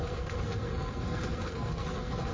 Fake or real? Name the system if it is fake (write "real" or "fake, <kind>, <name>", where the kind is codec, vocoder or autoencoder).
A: fake, codec, SNAC